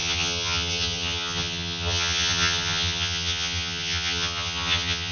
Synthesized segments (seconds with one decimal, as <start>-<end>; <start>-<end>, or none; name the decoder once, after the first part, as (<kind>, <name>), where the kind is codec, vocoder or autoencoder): 0.0-5.1 (vocoder, HiFi-GAN)